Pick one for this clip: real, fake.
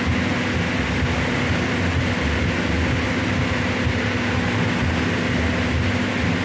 real